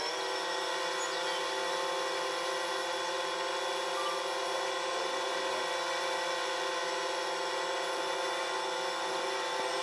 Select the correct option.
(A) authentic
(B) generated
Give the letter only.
A